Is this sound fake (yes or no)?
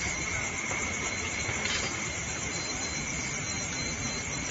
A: yes